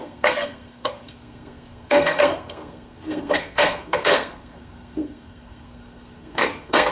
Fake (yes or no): yes